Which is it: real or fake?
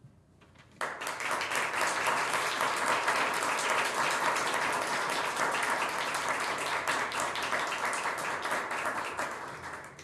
real